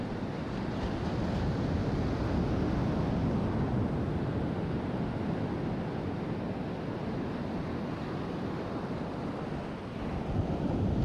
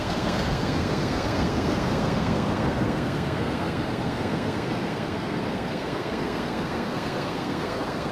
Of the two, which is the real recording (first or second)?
first